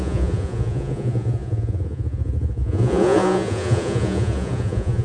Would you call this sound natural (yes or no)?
no